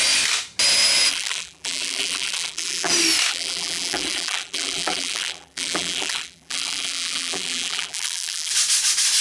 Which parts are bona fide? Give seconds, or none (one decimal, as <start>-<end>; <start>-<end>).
0.0-1.1; 2.9-3.3; 8.5-9.2